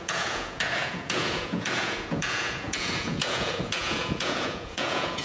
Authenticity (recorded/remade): remade